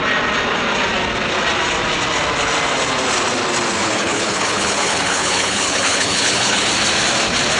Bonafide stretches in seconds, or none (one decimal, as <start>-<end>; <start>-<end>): 0.0-3.8; 6.7-7.6